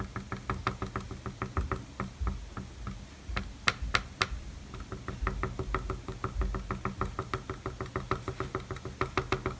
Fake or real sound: real